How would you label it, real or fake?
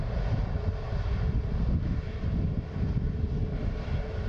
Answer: real